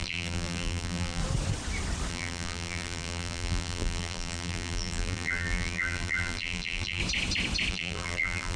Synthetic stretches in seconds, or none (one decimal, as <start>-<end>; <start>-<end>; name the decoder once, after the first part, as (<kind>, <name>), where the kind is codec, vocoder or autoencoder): 0.0-1.2 (vocoder, BigVGAN v2); 2.1-7.0; 7.7-8.6